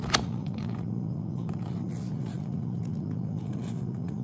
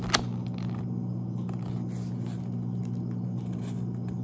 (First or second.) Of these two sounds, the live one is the second